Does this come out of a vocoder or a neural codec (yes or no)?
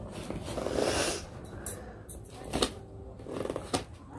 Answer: no